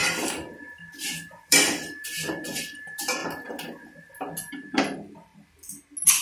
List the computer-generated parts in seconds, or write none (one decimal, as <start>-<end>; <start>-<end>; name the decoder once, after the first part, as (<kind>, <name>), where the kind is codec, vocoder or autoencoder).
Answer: 0.0-3.2 (vocoder, BigVGAN v2); 4.5-5.3